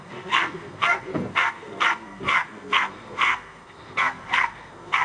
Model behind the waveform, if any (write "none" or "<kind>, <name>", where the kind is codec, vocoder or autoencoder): codec, SNAC